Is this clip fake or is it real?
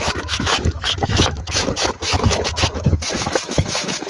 fake